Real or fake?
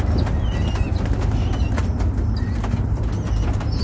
real